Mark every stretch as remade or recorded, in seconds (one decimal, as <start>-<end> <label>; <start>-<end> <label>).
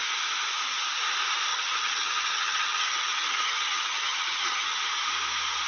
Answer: 0.0-1.5 recorded; 1.5-4.8 remade; 4.8-5.7 recorded